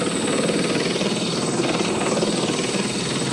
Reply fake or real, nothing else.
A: real